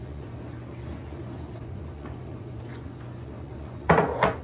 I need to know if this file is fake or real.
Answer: fake